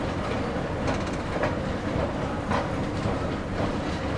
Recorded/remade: recorded